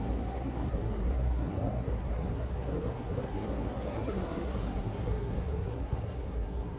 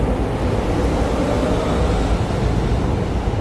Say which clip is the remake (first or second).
first